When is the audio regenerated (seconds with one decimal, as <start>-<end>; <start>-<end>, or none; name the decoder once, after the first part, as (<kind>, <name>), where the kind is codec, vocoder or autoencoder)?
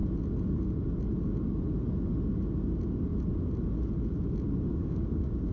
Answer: 4.7-5.5 (codec, DAC)